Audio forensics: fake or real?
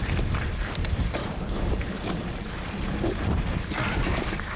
fake